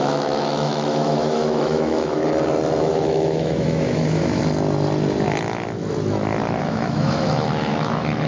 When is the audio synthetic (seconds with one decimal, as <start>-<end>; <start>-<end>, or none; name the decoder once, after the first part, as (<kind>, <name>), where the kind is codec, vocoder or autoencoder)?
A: 0.0-2.2 (autoencoder, DAC-VAE); 2.8-4.4; 6.6-8.3